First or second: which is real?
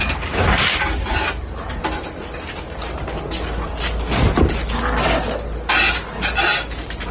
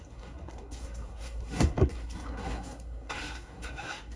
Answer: first